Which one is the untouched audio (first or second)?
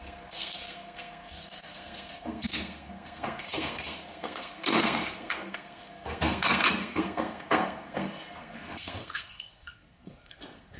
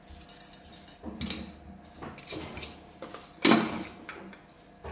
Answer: second